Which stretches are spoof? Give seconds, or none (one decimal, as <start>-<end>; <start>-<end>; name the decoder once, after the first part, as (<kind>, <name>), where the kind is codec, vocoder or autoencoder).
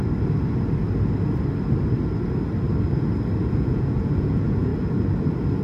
3.4-4.7 (vocoder, Vocos)